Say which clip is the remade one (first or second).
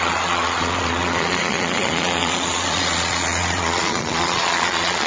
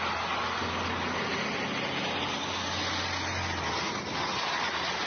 first